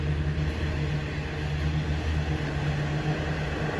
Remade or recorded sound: recorded